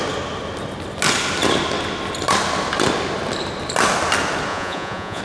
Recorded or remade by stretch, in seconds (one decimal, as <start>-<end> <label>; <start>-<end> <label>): 0.0-4.5 recorded; 4.5-5.2 remade